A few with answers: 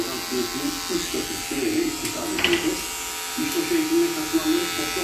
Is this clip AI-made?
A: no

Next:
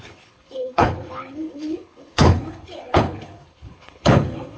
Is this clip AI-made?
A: yes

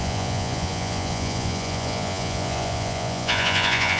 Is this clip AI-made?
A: yes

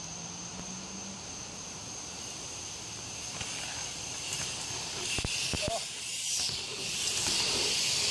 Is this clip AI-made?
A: no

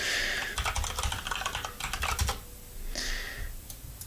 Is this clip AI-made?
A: no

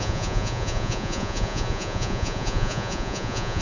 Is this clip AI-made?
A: yes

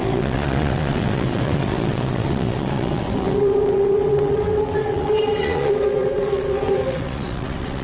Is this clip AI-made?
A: yes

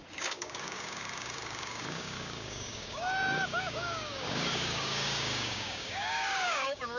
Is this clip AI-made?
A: yes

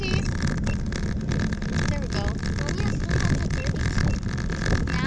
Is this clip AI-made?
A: no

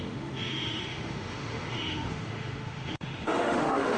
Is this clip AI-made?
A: yes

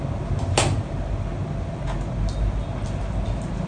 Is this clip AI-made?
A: no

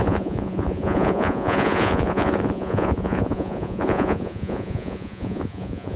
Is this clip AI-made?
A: yes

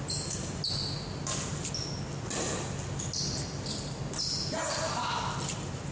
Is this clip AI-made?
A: no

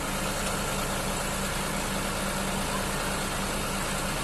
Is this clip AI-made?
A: no